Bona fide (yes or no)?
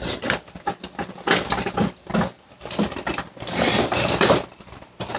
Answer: no